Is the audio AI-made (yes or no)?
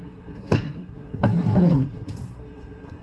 yes